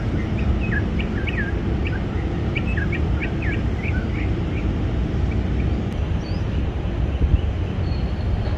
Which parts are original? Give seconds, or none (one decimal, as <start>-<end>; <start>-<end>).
0.0-8.6